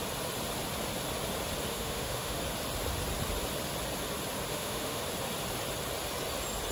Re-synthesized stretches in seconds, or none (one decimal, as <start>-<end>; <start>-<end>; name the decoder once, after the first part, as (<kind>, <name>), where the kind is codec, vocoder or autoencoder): 1.7-2.4 (autoencoder, DAC-VAE); 4.5-5.0